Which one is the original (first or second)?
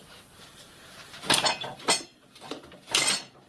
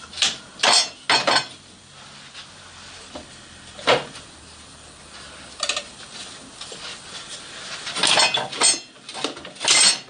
second